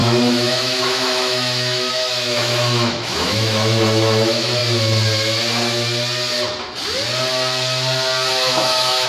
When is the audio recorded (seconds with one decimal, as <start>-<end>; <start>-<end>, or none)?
4.6-8.3